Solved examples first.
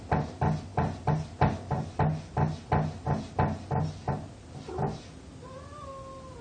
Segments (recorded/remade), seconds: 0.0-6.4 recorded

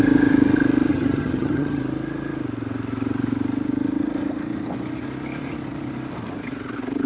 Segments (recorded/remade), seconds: 0.0-0.9 recorded; 0.9-1.8 remade; 1.8-7.1 recorded

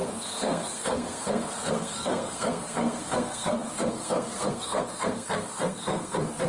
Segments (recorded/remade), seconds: 0.0-6.5 remade

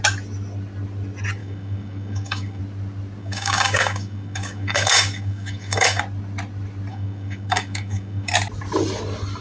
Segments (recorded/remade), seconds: 0.0-1.4 recorded; 1.4-2.6 remade; 2.6-3.2 recorded; 3.2-6.0 remade; 6.0-6.9 recorded; 6.9-8.3 remade; 8.3-9.4 recorded

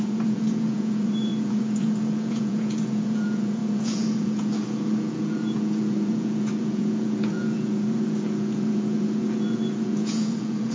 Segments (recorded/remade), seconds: 0.0-10.7 remade

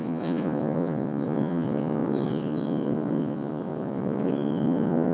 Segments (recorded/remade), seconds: 0.0-5.1 remade